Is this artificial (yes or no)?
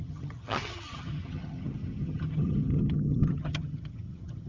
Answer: yes